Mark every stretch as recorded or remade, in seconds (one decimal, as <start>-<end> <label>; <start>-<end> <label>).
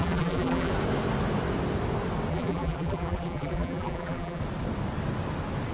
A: 0.0-0.7 remade; 0.7-2.3 recorded; 2.3-4.4 remade; 4.4-5.7 recorded